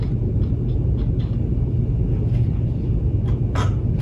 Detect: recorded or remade recorded